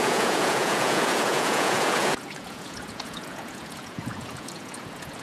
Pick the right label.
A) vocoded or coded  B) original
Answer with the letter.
A